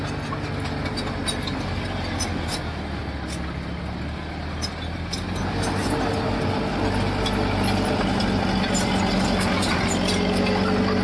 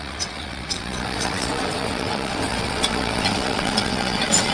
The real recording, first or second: first